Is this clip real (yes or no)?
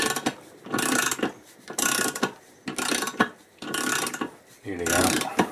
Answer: yes